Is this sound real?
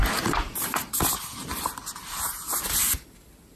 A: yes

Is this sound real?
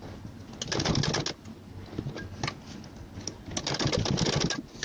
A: yes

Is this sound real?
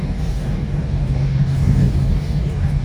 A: no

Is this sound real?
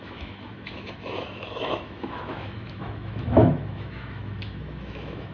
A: no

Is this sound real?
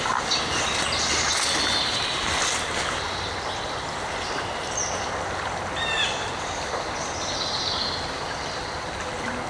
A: yes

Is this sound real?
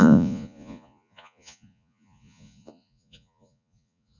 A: no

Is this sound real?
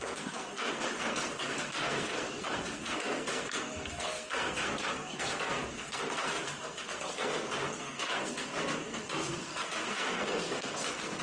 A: no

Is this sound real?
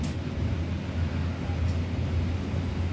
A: yes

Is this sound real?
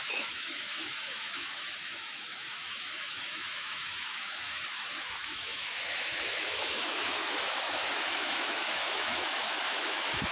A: no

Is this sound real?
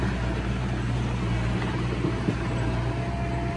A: yes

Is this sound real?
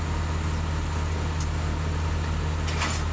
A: yes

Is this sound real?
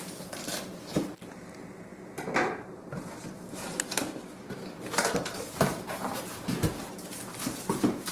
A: no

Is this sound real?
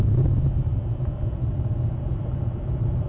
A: yes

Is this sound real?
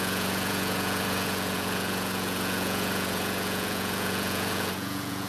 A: no